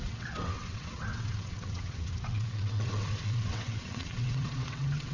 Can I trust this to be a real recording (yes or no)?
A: no